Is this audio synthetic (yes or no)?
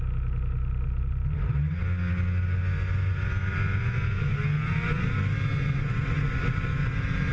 no